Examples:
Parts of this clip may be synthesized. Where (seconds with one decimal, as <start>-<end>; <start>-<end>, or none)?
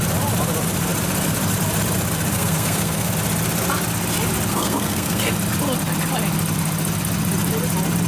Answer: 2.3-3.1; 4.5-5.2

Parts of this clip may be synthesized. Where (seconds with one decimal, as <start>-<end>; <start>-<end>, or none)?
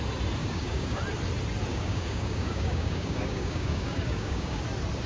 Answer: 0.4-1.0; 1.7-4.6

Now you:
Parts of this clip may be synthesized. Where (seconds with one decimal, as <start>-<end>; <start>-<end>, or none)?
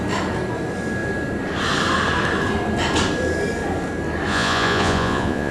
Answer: 4.3-5.5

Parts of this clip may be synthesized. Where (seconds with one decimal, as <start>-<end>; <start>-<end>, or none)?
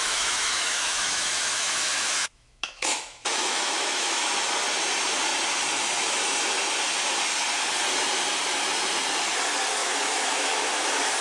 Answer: 0.0-4.3; 9.8-10.7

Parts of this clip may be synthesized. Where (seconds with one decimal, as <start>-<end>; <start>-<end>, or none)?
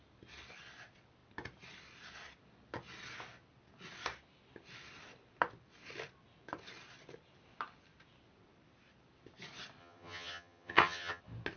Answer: 9.8-11.2